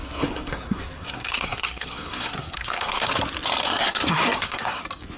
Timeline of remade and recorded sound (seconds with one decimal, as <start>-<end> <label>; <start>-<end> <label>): 0.0-3.1 remade; 3.1-3.6 recorded; 3.6-4.8 remade; 4.8-5.2 recorded